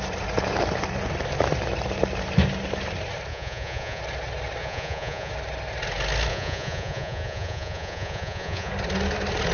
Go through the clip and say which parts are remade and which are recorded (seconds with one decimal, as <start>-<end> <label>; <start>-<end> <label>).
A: 0.0-3.3 recorded; 3.3-4.0 remade; 4.0-4.6 recorded; 4.6-5.3 remade; 5.3-6.3 recorded; 6.3-8.7 remade; 8.7-9.5 recorded

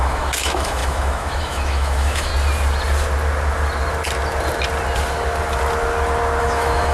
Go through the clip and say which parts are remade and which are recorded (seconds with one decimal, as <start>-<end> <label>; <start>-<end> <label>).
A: 0.0-2.3 remade; 2.3-6.4 recorded; 6.4-6.9 remade

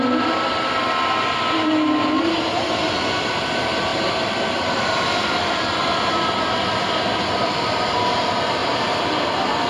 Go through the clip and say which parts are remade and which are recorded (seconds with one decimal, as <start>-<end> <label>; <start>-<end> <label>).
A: 0.0-3.9 recorded; 3.9-5.5 remade; 5.5-8.6 recorded; 8.6-9.7 remade